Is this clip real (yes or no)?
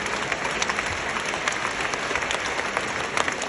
yes